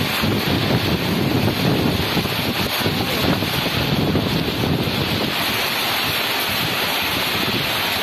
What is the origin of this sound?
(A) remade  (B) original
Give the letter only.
B